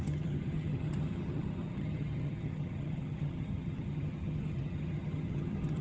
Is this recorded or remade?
remade